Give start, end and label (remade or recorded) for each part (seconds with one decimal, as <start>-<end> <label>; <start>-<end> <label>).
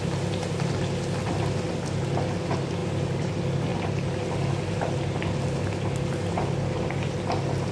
0.0-2.8 recorded; 2.8-3.3 remade; 3.3-7.7 recorded